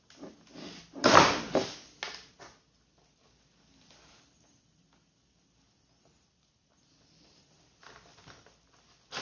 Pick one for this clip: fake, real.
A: real